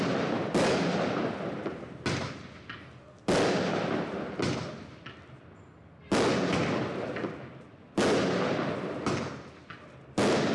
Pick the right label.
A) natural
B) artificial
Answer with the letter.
A